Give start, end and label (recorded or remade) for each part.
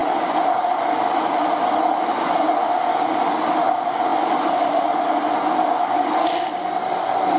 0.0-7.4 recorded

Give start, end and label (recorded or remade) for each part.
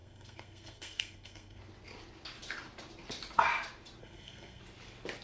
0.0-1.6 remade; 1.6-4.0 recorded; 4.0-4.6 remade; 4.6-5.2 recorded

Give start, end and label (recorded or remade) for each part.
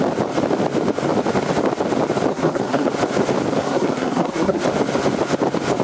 0.0-2.3 recorded; 2.3-2.9 remade; 2.9-3.6 recorded; 3.6-4.6 remade; 4.6-5.8 recorded